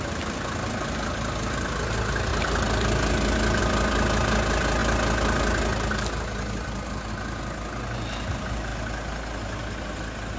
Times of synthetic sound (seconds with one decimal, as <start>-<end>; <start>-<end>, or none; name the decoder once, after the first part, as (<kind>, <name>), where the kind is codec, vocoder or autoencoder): none